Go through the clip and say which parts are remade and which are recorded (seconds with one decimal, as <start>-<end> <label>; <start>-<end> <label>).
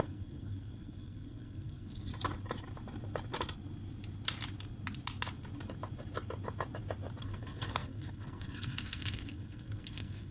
0.0-2.1 remade; 2.1-7.2 recorded; 7.2-10.3 remade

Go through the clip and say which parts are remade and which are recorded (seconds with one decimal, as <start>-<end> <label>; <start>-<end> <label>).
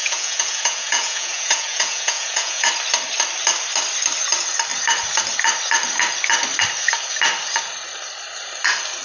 0.0-2.7 remade; 2.7-9.0 recorded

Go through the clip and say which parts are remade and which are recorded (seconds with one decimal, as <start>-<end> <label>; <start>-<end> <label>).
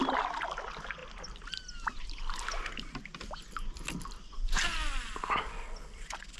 0.0-6.4 recorded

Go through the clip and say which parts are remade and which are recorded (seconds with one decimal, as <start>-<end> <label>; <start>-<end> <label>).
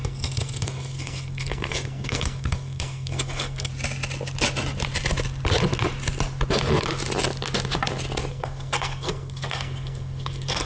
0.0-3.7 remade; 3.7-8.3 recorded; 8.3-10.7 remade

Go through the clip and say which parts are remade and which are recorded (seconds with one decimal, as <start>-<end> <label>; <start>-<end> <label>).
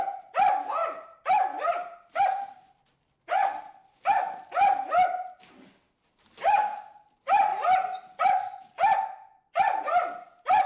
0.0-0.8 recorded; 0.8-4.0 remade; 4.0-10.7 recorded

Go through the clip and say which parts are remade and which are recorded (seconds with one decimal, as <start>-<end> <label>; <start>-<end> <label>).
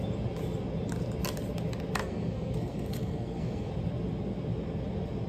0.0-2.0 recorded; 2.0-3.7 remade; 3.7-5.3 recorded